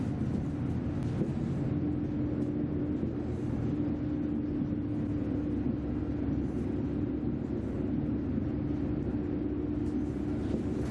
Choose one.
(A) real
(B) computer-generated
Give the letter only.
A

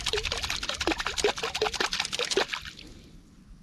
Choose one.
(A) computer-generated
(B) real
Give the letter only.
B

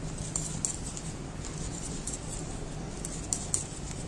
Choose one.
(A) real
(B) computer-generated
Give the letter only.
A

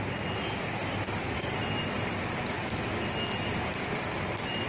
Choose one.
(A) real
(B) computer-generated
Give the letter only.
A